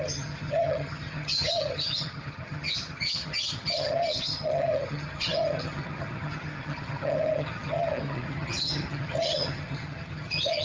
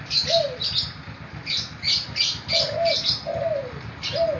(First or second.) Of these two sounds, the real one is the second